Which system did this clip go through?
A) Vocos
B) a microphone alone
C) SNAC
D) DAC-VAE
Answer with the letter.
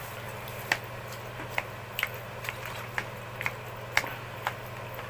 B